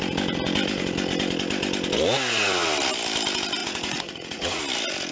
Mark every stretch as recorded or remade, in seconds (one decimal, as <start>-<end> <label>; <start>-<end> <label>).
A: 0.0-3.6 recorded; 3.6-4.6 remade; 4.6-5.1 recorded